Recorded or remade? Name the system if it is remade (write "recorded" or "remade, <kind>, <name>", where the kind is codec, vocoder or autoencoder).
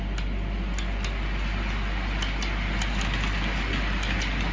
recorded